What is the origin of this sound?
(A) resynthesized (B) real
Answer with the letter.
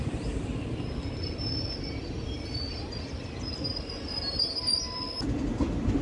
B